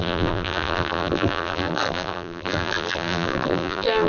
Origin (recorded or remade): remade